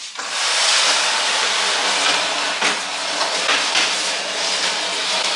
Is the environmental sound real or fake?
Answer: real